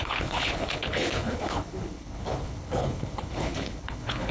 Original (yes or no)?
no